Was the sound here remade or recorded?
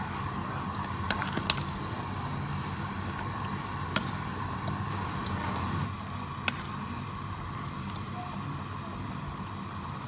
recorded